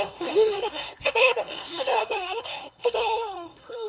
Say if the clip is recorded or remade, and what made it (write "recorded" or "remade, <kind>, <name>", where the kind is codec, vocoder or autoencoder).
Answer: remade, codec, SNAC